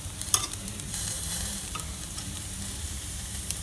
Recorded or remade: remade